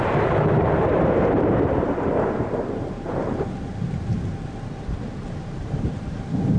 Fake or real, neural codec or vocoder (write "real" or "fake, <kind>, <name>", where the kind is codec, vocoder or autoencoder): fake, vocoder, BigVGAN v2